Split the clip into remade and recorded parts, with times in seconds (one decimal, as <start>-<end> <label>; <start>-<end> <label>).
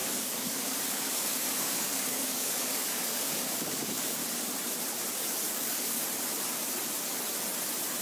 0.0-4.2 remade; 4.2-5.5 recorded; 5.5-6.0 remade; 6.0-8.0 recorded